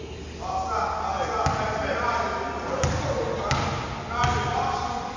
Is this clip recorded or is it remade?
recorded